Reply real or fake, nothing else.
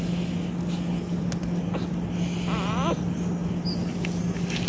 real